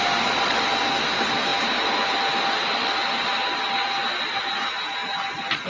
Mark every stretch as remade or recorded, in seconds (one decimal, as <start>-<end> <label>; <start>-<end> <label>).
0.0-5.7 recorded